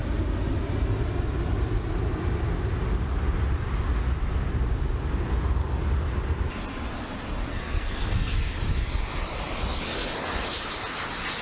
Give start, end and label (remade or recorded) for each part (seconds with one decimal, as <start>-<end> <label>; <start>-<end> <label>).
0.0-7.5 recorded; 7.5-8.3 remade; 8.3-11.4 recorded

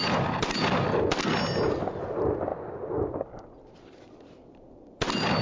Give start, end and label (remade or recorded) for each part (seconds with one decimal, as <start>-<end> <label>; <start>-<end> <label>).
0.0-5.4 recorded

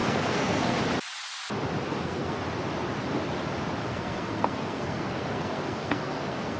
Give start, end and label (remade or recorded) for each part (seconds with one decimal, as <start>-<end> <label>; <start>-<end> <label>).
0.0-0.8 remade; 0.8-1.9 recorded; 1.9-2.4 remade; 2.4-3.8 recorded; 3.8-6.6 remade

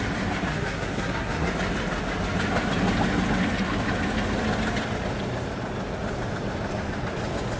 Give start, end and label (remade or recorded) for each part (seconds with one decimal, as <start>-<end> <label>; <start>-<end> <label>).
0.0-0.5 recorded; 0.5-1.5 remade; 1.5-7.6 recorded